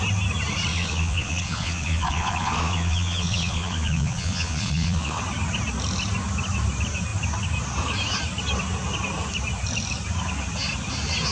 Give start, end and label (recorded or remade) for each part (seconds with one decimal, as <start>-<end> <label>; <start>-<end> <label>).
0.0-0.7 recorded; 0.7-5.2 remade; 5.2-11.3 recorded